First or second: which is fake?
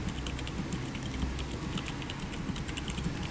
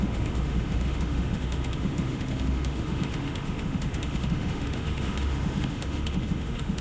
second